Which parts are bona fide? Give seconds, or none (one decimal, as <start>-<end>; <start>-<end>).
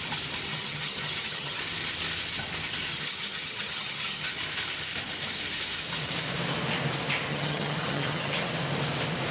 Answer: 0.0-0.5; 1.6-2.9; 4.3-7.3; 8.5-9.3